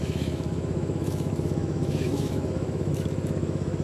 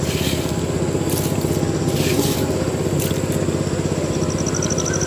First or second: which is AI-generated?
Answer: first